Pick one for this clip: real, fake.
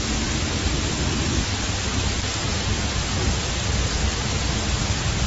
fake